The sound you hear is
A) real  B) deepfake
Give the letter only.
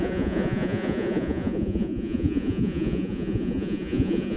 B